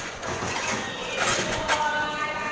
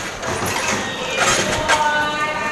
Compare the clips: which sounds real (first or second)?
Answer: second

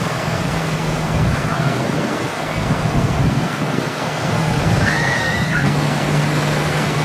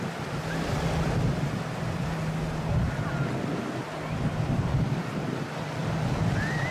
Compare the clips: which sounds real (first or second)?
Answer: second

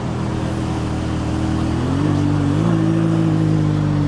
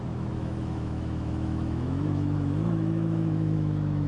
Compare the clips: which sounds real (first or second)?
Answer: first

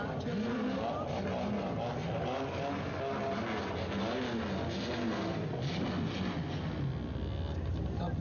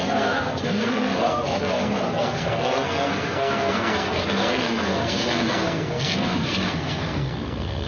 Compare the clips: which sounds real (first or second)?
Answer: first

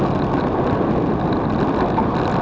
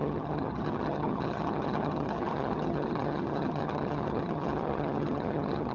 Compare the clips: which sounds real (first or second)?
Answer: first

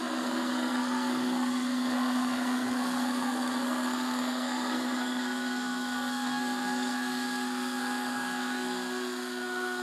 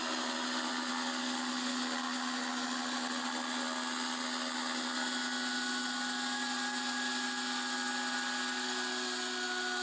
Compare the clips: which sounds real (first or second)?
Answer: second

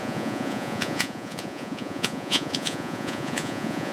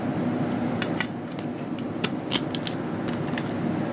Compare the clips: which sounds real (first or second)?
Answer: second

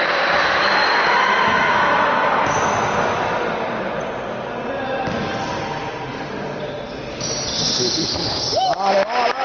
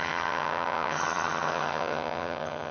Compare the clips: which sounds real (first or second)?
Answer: first